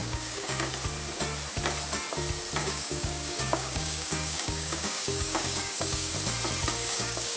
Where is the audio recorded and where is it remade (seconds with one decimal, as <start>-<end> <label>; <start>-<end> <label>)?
0.0-0.7 remade; 0.7-2.6 recorded; 2.6-6.1 remade; 6.1-6.7 recorded; 6.7-7.4 remade